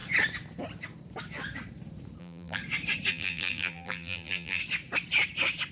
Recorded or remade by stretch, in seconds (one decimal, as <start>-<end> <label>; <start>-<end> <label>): 0.0-2.2 recorded; 2.2-2.6 remade; 2.6-3.1 recorded; 3.1-4.6 remade; 4.6-5.7 recorded